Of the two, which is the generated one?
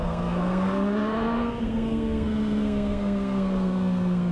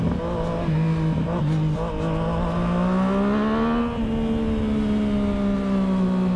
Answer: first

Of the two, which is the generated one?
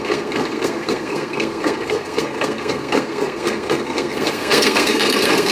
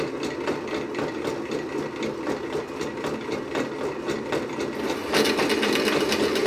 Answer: first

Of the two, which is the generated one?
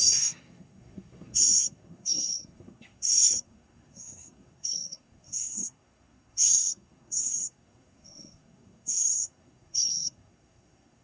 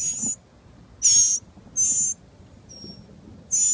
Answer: first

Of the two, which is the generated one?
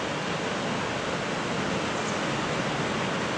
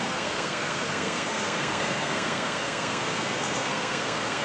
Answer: second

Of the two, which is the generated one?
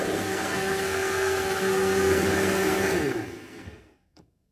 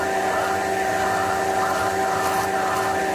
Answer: first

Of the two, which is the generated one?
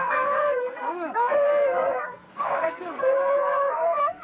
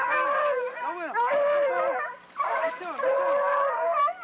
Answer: first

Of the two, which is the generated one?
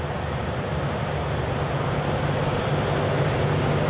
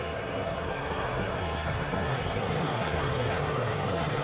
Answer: second